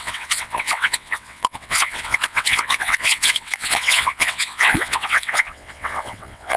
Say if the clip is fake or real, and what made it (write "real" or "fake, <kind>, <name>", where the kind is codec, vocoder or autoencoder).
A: fake, vocoder, WaveNeXt